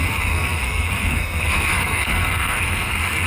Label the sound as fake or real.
fake